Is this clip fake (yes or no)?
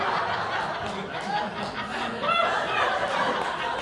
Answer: no